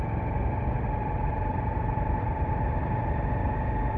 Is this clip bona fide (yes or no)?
yes